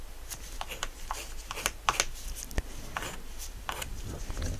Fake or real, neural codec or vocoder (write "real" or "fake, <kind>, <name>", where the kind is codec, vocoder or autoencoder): real